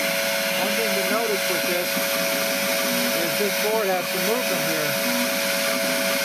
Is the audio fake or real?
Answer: real